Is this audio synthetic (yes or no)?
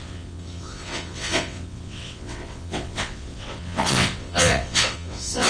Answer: yes